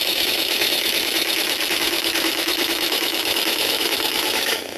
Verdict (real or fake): fake